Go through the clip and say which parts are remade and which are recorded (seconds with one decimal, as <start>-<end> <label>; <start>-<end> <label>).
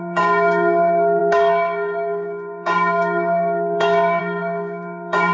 0.0-5.3 remade